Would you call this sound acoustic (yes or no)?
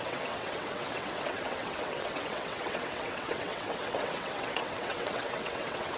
no